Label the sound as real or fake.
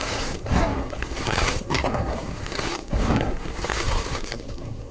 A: fake